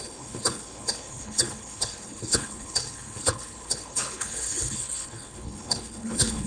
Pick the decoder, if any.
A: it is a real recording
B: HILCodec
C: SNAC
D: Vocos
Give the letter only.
B